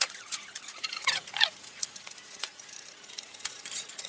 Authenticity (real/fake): fake